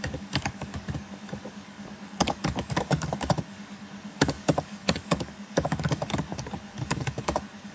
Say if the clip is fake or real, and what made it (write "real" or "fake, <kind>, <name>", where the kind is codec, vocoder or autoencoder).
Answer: fake, codec, DAC